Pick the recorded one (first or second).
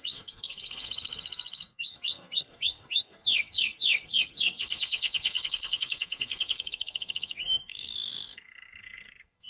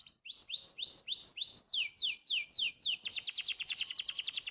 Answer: second